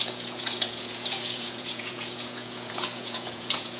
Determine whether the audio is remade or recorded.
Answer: remade